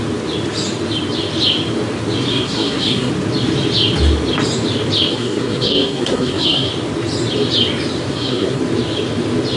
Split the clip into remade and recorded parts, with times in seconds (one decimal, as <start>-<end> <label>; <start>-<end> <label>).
0.0-2.3 recorded; 2.3-3.1 remade; 3.1-5.1 recorded; 5.1-6.7 remade; 6.7-8.1 recorded; 8.1-8.6 remade; 8.6-9.6 recorded